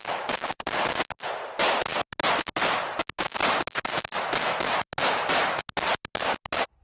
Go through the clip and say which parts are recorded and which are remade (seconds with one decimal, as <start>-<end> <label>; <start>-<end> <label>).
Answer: 0.0-0.6 remade; 0.6-6.8 recorded